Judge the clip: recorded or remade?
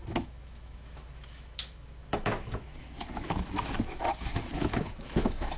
remade